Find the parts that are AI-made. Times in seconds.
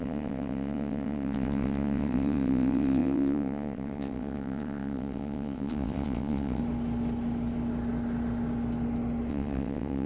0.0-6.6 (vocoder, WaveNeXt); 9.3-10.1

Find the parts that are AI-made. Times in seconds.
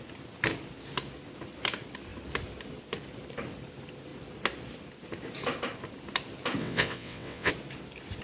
6.6-7.5 (vocoder, WaveNeXt)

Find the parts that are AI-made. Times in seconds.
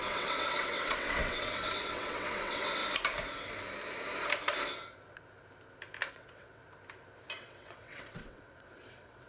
0.0-2.8 (vocoder, WaveNeXt); 6.1-6.6; 7.4-9.3